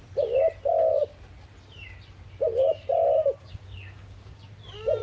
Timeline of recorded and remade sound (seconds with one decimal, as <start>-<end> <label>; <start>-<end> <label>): 0.0-3.5 recorded; 3.5-4.4 remade; 4.4-5.0 recorded